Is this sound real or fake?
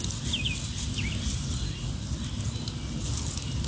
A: real